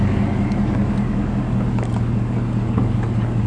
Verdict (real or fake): fake